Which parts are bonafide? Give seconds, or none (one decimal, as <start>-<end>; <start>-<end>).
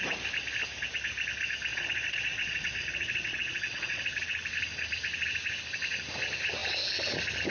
0.0-1.7; 4.2-7.5